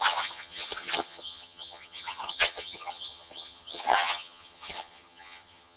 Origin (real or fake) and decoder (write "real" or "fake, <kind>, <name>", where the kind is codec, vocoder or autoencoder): fake, vocoder, HiFi-GAN